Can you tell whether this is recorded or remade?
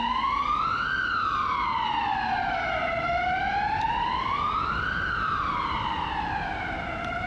recorded